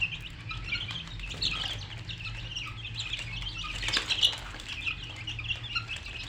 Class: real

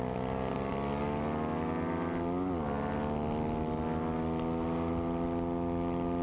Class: real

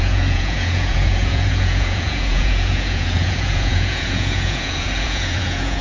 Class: fake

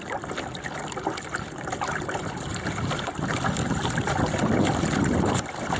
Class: real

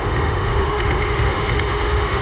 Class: fake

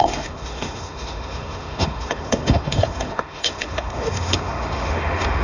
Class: fake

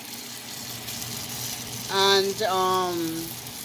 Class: real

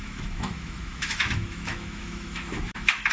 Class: fake